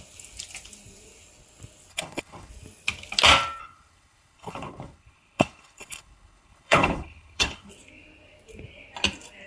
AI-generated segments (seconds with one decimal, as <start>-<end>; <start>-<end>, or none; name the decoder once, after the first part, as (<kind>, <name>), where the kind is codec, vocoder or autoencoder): 1.9-2.5 (codec, HILCodec); 3.6-7.7